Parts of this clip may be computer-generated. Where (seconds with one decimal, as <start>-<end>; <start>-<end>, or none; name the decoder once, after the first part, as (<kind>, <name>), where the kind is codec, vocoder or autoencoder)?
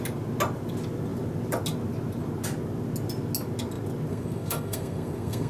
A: 4.1-5.5 (codec, SNAC)